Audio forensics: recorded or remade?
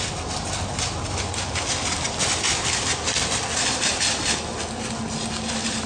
recorded